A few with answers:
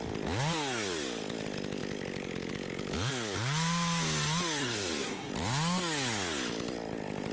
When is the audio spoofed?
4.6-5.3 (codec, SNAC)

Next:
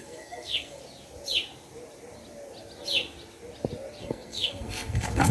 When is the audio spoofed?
0.0-0.8 (codec, SNAC); 4.0-5.3

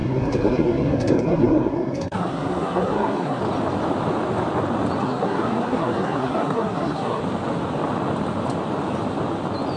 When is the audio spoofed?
0.0-3.4 (codec, SNAC); 5.0-7.2

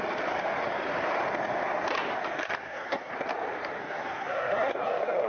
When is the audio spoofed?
2.6-3.1 (codec, SNAC); 3.8-5.3